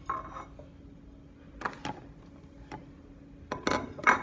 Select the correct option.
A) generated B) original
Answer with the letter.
B